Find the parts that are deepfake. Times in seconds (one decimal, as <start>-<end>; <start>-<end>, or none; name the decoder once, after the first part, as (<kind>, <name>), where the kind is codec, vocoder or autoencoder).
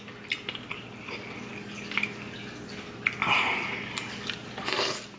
none